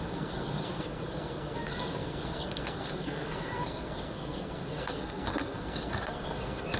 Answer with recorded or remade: remade